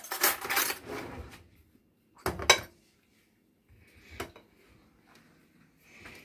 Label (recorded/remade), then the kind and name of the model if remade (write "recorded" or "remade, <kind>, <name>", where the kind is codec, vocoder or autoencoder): recorded